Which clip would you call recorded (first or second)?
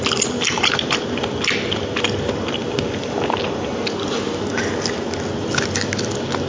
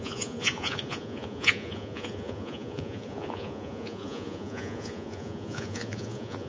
first